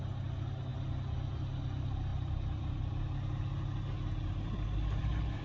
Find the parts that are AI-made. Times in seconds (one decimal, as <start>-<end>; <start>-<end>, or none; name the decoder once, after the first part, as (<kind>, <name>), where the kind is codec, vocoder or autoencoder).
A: none